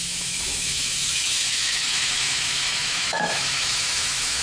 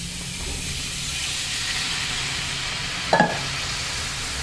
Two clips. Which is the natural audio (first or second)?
second